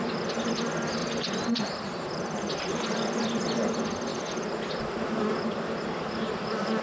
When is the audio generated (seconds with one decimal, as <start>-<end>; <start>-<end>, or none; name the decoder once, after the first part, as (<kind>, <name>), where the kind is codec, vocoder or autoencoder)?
1.0-2.7 (vocoder, BigVGAN v2); 4.1-5.0

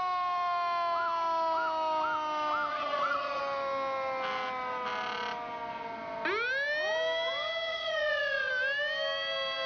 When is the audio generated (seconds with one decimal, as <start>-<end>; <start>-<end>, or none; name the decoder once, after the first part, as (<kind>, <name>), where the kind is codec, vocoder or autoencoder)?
2.7-3.4 (vocoder, Vocos); 7.7-8.5